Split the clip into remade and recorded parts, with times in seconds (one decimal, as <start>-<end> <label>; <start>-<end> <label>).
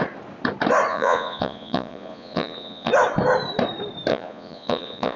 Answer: 0.0-0.9 recorded; 0.9-2.9 remade; 2.9-4.1 recorded; 4.1-5.2 remade